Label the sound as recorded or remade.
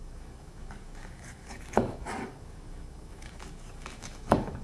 remade